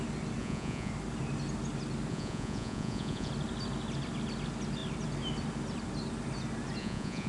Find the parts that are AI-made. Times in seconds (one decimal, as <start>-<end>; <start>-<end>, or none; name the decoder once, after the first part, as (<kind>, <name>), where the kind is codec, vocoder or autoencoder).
0.4-0.9 (vocoder, Vocos); 2.1-3.3; 6.8-7.3